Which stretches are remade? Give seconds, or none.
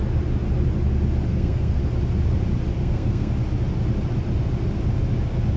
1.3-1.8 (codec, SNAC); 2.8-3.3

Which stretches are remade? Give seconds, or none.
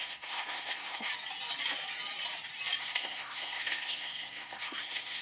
0.0-1.1 (codec, SNAC); 2.8-5.2